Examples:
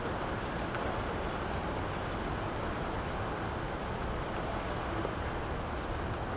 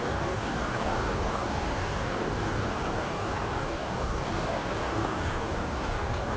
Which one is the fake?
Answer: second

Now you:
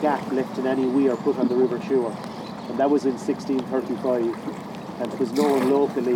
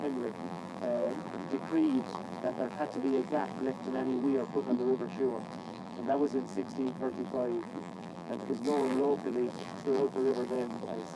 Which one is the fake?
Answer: second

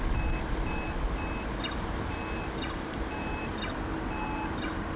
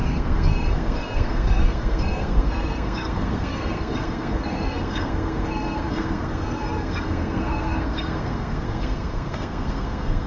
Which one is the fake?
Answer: second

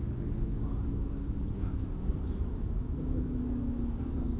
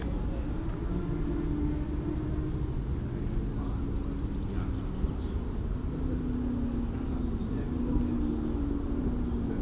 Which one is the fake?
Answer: first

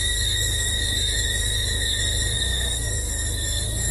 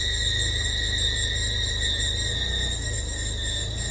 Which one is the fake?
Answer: first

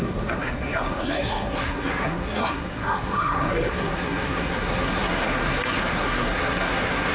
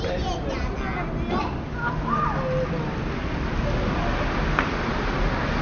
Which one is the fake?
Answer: first